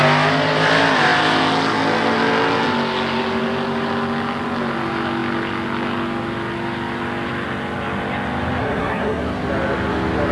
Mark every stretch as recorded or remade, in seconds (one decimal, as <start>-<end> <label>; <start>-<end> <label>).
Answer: 0.0-8.6 recorded; 8.6-9.2 remade; 9.2-10.3 recorded